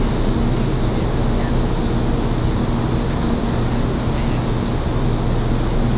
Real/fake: real